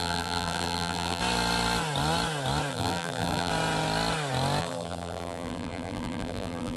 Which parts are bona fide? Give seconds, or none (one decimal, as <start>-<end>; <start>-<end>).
1.2-2.7; 3.5-4.6